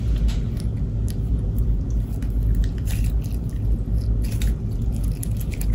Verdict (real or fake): real